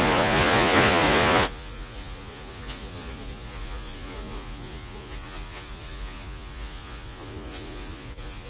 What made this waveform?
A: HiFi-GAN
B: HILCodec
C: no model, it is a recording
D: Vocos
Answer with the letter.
D